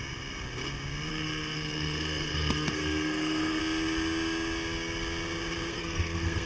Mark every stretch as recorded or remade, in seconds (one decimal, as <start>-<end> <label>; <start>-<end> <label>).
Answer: 0.0-1.1 recorded; 1.1-3.6 remade; 3.6-5.7 recorded; 5.7-6.5 remade